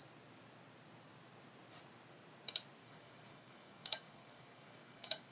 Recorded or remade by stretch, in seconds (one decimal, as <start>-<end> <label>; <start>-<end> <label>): 0.0-2.8 recorded; 2.8-5.3 remade